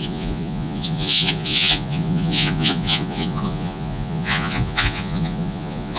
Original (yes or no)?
no